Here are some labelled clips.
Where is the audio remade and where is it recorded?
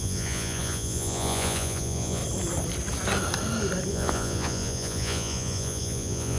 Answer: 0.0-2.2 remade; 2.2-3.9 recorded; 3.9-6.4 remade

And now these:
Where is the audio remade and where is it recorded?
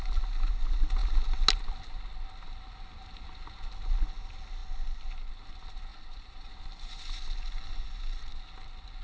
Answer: 0.0-5.9 recorded; 5.9-6.5 remade; 6.5-9.0 recorded